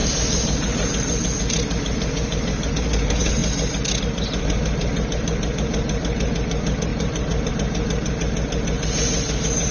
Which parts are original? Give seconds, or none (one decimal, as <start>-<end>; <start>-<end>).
3.4-4.0